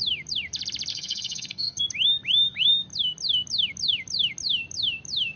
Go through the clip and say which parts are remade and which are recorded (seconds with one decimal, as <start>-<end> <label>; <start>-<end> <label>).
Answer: 0.0-0.9 recorded; 0.9-1.8 remade; 1.8-5.4 recorded